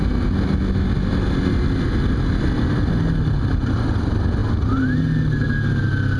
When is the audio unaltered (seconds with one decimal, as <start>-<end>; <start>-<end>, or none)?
0.0-6.2